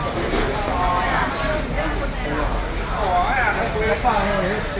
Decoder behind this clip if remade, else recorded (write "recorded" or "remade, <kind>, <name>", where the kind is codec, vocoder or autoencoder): recorded